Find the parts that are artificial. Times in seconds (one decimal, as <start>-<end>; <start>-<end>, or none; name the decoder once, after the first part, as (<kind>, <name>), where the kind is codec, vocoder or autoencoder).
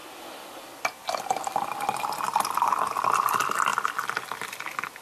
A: none